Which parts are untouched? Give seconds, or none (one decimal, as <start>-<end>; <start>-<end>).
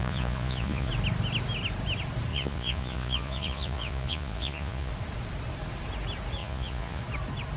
0.9-2.3; 4.9-6.4; 7.0-7.6